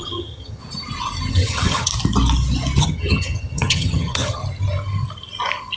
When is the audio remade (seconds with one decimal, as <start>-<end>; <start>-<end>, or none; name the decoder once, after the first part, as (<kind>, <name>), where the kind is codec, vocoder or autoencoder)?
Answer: 0.0-0.6 (vocoder, HiFi-GAN); 1.3-1.9; 2.8-4.4